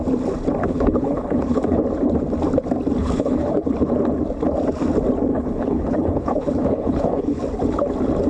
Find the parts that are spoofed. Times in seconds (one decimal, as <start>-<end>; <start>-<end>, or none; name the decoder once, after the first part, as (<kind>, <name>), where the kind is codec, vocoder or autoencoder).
0.6-1.8 (codec, HILCodec); 3.0-3.7; 5.3-7.4